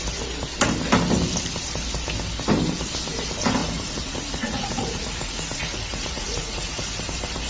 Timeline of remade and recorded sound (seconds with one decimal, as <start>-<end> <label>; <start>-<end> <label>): 0.0-3.6 recorded; 3.6-7.0 remade; 7.0-7.5 recorded